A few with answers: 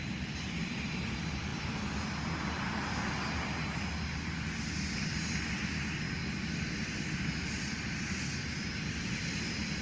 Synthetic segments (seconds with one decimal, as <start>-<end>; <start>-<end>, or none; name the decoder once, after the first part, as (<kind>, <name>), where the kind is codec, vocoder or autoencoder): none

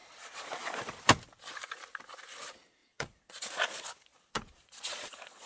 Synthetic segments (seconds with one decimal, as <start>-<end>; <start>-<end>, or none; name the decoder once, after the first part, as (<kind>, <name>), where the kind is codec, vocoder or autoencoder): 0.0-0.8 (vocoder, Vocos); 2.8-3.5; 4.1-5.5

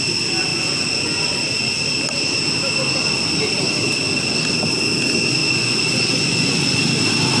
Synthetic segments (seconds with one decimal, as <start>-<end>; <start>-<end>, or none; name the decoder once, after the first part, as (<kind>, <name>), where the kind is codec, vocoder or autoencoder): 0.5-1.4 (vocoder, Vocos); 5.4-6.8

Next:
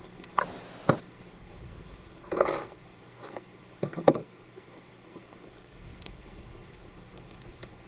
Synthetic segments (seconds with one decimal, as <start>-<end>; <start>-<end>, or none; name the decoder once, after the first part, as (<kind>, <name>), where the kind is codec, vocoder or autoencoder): 0.0-0.4 (codec, SNAC); 1.0-7.9

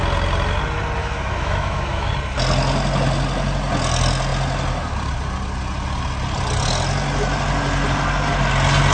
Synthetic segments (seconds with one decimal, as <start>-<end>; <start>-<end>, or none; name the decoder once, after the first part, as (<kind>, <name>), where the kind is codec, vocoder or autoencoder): 1.0-2.1 (autoencoder, DAC-VAE)